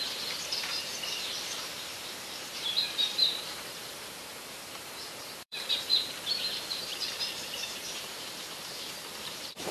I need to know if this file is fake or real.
fake